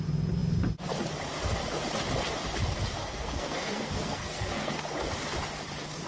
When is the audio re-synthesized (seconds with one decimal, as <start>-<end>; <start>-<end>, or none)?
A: 3.0-4.8